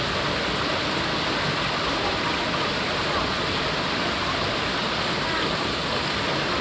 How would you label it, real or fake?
real